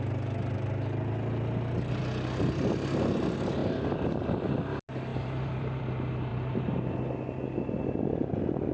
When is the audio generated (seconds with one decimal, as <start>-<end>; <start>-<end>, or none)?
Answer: 5.1-5.8; 6.3-6.8